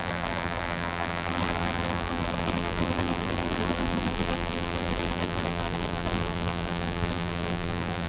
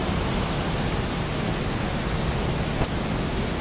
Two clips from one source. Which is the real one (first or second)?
second